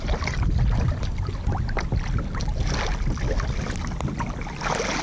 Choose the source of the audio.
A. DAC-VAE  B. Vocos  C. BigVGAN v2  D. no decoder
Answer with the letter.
D